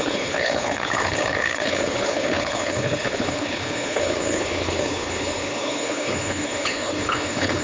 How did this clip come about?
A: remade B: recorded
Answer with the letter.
A